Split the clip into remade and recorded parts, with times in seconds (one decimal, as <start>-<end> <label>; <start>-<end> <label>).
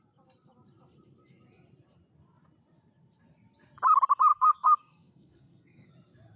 0.0-4.3 recorded; 4.3-5.9 remade; 5.9-6.4 recorded